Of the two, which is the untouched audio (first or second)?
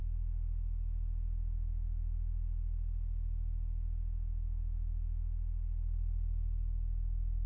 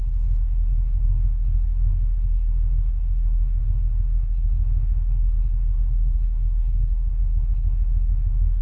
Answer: first